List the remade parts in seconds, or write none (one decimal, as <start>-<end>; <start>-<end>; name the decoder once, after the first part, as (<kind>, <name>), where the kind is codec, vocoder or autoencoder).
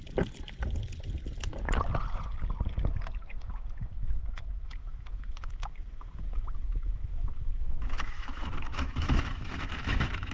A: 3.5-10.3 (autoencoder, DAC-VAE)